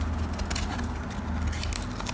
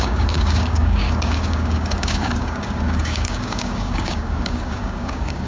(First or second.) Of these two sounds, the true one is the first